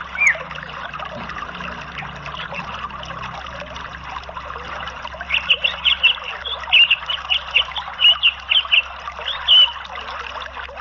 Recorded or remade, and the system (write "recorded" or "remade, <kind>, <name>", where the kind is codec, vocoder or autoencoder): recorded